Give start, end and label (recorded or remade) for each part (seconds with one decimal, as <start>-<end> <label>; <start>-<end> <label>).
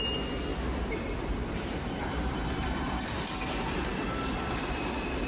0.0-0.5 recorded; 0.5-3.5 remade; 3.5-5.3 recorded